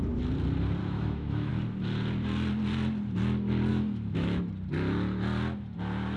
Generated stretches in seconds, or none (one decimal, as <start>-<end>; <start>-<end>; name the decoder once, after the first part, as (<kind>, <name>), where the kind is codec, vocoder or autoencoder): 0.8-1.5 (autoencoder, DAC-VAE); 3.7-4.5